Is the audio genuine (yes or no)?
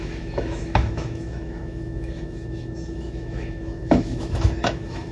no